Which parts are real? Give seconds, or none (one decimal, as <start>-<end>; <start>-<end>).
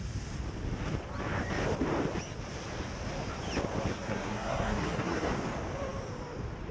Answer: 0.0-3.9; 5.3-6.7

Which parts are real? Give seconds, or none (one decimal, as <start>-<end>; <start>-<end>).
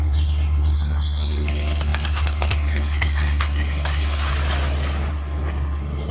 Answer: 4.3-5.1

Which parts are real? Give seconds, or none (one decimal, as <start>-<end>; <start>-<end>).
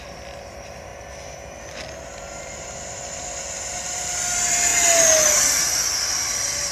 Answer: 0.9-2.4; 4.7-6.0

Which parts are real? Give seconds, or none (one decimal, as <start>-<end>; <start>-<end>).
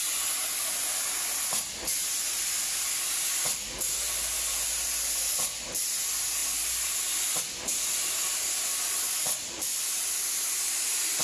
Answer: 0.0-11.2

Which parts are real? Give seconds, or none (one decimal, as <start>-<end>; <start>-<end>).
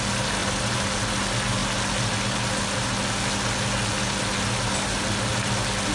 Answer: 0.0-5.9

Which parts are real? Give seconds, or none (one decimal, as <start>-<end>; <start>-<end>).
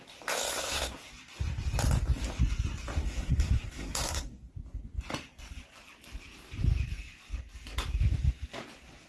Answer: 0.0-0.5; 1.1-3.0; 4.5-9.1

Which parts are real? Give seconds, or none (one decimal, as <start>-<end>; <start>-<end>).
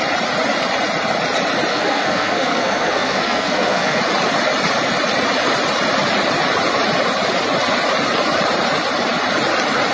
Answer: 0.0-1.7; 4.0-9.9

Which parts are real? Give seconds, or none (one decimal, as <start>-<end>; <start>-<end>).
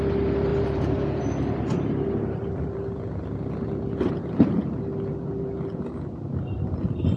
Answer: 0.0-0.5; 1.2-7.2